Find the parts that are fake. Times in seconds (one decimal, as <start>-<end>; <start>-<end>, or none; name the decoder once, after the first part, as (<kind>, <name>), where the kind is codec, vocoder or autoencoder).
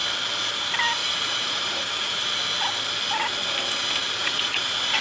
1.0-2.4 (vocoder, Vocos); 4.2-5.0